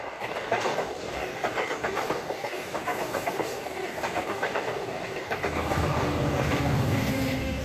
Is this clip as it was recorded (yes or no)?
no